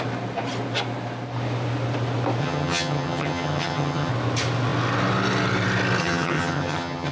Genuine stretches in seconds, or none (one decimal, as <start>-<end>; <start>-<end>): 0.0-2.4; 4.1-6.0